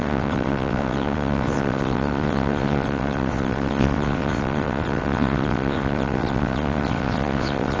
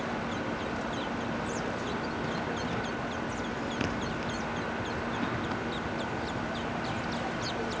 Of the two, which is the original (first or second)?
second